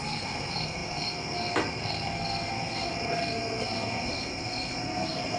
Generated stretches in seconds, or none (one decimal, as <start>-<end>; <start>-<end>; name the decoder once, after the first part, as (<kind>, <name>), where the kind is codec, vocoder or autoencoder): 0.0-5.4 (codec, SNAC)

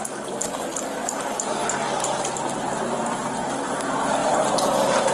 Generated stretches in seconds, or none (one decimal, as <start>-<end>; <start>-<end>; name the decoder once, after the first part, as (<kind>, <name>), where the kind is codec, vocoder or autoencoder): 4.2-5.1 (vocoder, BigVGAN v2)

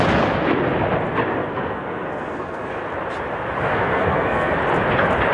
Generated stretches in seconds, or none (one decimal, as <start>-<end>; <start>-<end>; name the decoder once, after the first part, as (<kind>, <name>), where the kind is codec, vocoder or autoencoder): 1.4-2.7 (codec, SNAC); 3.7-4.5

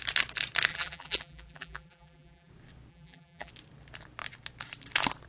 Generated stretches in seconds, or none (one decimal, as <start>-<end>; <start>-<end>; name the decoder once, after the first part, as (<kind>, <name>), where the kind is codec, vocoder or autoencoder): 0.7-2.5 (vocoder, BigVGAN v2); 2.9-3.5

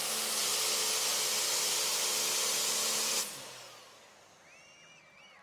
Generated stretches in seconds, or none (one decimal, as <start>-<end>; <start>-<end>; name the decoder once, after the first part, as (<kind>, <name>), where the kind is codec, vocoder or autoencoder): none